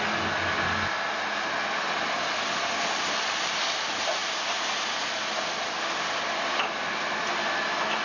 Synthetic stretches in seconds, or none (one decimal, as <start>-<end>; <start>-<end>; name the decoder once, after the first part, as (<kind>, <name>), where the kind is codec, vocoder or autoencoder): 4.2-5.3 (vocoder, BigVGAN v2)